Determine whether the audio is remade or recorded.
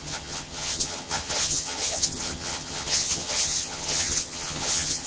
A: remade